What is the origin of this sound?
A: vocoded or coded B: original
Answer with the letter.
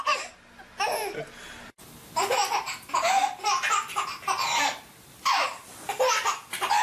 B